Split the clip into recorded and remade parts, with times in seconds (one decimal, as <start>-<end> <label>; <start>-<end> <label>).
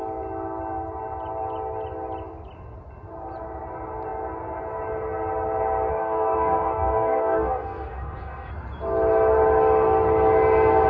0.0-5.9 recorded; 5.9-8.5 remade; 8.5-10.9 recorded